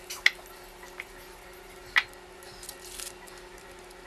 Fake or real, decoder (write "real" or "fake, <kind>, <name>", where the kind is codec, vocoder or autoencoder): real